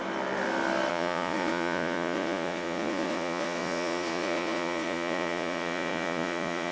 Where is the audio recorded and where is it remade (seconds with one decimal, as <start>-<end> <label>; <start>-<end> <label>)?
0.0-0.9 recorded; 0.9-6.7 remade

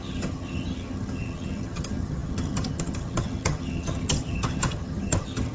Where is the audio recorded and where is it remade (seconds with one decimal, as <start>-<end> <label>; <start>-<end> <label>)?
0.0-5.5 remade